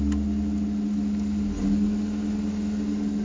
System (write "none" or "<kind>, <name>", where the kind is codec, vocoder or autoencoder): none